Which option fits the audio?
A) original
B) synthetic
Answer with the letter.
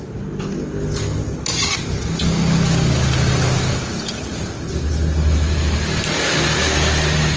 A